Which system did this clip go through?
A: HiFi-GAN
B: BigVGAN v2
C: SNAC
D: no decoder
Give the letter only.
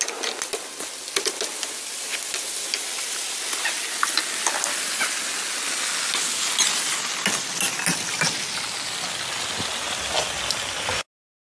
D